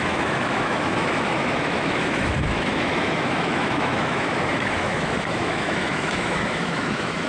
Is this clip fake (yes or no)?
yes